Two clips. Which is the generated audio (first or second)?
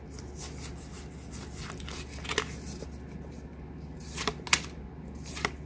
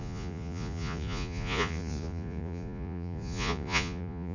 second